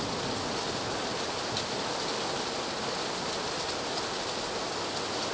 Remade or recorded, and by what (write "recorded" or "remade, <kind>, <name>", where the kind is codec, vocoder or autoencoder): recorded